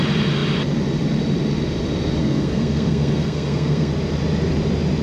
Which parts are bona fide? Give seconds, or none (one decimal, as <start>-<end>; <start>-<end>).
0.0-2.2; 3.9-5.0